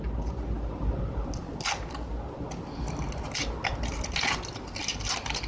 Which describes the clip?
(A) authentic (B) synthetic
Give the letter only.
A